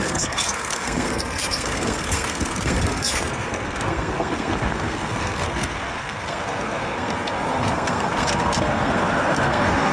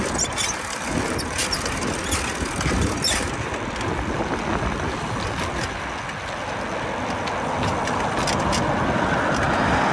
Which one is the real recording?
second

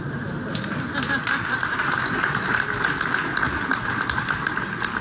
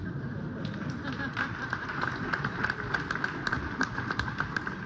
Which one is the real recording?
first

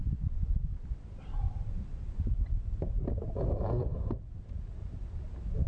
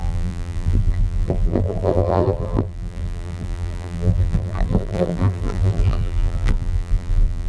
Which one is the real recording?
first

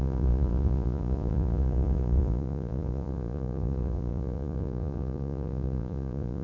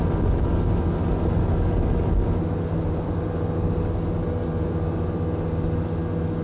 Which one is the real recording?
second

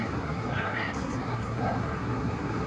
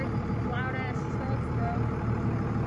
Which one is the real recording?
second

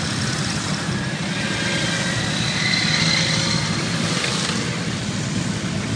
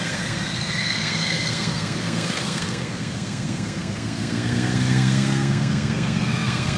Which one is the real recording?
first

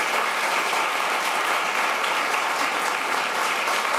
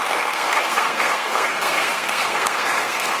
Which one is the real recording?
first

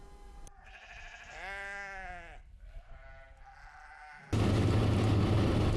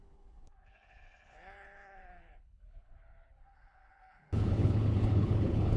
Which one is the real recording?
first